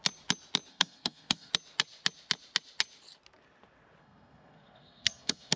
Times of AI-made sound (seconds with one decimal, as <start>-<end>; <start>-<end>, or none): 0.7-1.5; 4.0-5.6